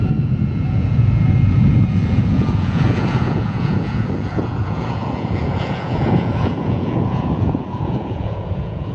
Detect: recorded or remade remade